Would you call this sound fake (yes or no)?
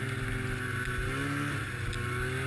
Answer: no